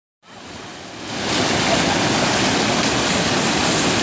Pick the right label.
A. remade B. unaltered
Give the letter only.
B